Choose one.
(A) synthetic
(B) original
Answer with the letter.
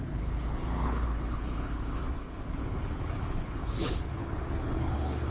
A